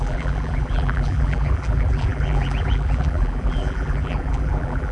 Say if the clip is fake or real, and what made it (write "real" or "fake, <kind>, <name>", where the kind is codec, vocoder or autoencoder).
fake, vocoder, BigVGAN v2